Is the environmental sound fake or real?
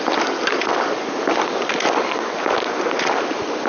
real